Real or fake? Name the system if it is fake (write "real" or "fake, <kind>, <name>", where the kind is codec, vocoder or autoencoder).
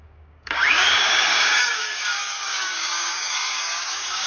fake, codec, DAC